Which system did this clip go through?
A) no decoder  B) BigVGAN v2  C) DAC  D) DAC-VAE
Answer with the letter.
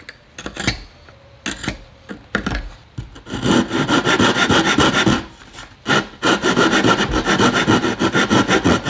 A